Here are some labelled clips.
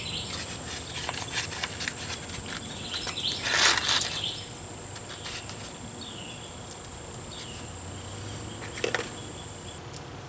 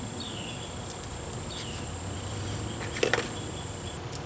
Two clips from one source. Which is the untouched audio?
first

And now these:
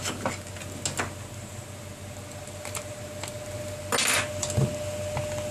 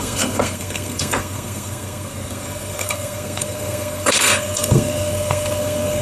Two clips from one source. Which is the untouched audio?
first